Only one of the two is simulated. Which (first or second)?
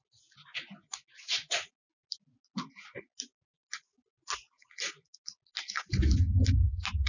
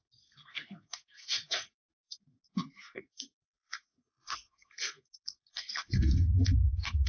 second